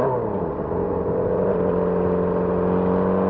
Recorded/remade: recorded